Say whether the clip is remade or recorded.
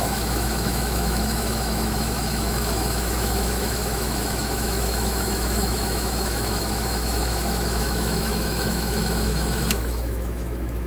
remade